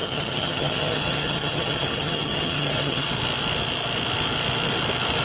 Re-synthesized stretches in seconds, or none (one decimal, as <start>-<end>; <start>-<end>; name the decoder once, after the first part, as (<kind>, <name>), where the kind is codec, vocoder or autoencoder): 0.0-3.1 (vocoder, HiFi-GAN)